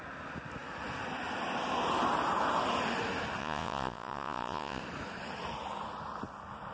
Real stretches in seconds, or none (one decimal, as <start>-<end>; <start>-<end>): 0.0-3.4; 4.8-6.7